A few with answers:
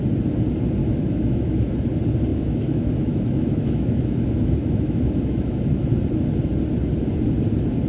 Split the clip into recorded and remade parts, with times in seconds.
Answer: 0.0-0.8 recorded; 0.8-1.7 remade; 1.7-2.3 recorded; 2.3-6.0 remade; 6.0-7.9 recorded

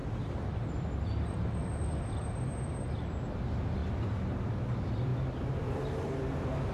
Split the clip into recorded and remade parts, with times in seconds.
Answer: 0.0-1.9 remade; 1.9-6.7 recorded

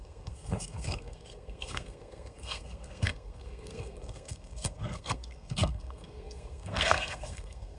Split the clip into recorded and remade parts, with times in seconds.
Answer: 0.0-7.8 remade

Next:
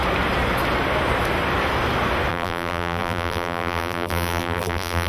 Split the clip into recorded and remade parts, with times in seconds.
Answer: 0.0-2.3 recorded; 2.3-5.1 remade

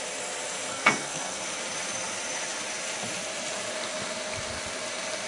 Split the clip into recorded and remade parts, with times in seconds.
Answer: 0.0-0.7 recorded; 0.7-1.4 remade; 1.4-5.3 recorded